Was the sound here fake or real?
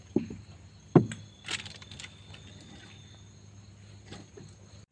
real